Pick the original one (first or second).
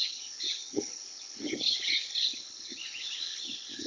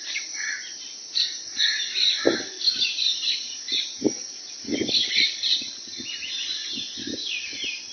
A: second